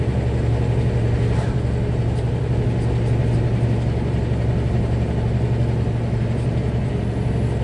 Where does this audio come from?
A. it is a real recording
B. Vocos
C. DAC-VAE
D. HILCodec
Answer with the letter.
A